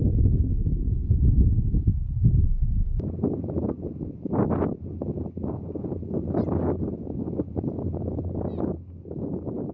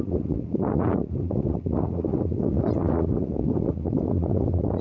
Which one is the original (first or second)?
first